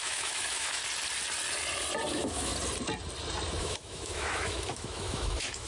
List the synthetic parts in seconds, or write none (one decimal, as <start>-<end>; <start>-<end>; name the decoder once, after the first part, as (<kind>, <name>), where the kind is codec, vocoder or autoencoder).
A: 0.0-0.8 (autoencoder, DAC-VAE); 2.1-2.5; 3.6-5.7